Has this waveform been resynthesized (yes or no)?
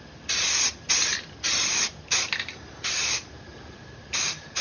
no